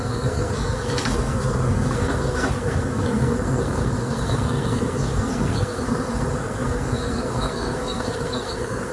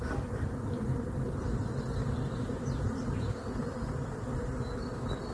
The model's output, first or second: first